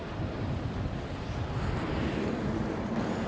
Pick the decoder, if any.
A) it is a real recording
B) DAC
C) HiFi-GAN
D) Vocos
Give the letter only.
A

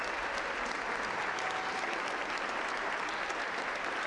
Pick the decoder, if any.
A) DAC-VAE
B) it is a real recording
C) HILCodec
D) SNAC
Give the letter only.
B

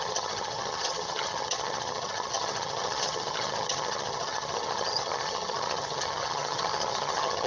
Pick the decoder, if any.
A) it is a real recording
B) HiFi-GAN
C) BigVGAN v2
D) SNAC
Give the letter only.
B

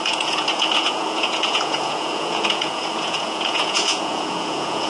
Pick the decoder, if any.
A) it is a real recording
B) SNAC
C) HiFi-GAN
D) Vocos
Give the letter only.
D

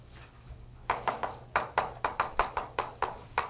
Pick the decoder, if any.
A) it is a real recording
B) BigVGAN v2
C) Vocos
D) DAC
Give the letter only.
D